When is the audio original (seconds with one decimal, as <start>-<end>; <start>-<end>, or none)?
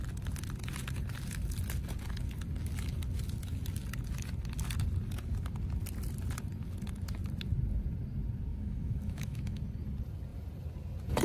0.0-8.5; 9.6-11.2